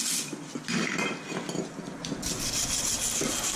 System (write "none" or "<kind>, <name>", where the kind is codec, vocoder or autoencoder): none